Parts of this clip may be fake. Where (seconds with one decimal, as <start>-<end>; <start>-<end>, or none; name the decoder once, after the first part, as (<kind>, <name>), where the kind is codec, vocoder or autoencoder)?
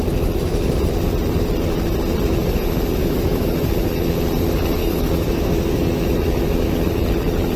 3.0-3.6 (autoencoder, DAC-VAE); 4.8-6.7